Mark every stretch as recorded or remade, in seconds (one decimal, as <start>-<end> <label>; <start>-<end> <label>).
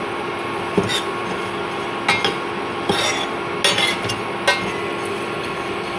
0.0-6.0 recorded